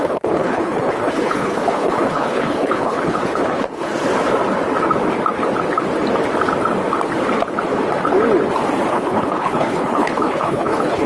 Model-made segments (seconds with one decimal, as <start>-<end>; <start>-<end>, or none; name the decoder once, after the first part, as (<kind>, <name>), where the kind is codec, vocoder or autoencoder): 0.0-3.9 (codec, HILCodec); 8.9-11.1

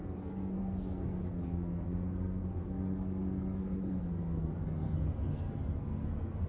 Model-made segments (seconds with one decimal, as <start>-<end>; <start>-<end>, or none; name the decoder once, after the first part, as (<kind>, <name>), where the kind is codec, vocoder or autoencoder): 0.0-6.5 (codec, SNAC)

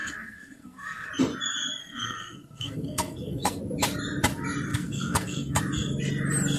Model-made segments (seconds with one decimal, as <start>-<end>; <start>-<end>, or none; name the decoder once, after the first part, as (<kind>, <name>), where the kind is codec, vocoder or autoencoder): 0.0-1.1 (codec, SNAC); 1.8-3.6; 4.7-5.6

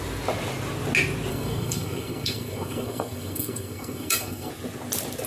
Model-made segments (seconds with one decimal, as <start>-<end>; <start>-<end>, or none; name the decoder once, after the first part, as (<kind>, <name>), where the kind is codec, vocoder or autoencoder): 1.3-4.5 (codec, SNAC)

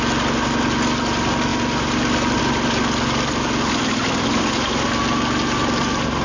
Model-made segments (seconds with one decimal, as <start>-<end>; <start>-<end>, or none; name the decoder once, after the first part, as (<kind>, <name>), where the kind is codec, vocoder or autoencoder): none